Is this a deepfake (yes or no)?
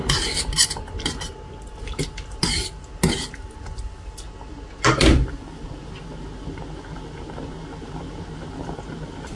no